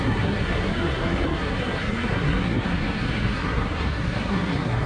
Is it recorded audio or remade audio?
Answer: remade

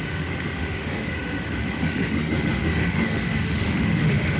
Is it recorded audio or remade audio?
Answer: remade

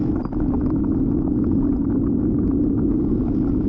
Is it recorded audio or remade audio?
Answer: recorded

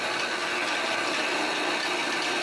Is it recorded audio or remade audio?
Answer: recorded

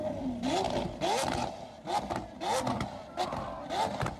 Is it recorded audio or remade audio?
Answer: recorded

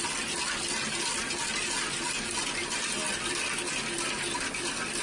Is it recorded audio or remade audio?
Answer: recorded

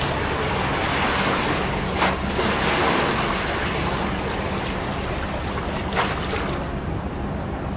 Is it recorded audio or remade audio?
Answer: recorded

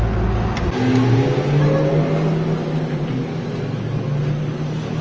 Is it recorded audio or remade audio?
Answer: recorded